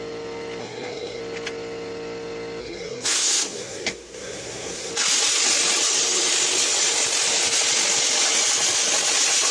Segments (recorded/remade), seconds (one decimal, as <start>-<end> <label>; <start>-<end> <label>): 0.0-0.6 recorded; 0.6-1.2 remade; 1.2-2.6 recorded; 2.6-4.9 remade; 4.9-9.5 recorded